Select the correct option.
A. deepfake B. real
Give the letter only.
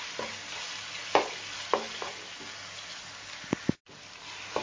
B